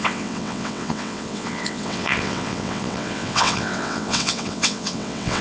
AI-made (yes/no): yes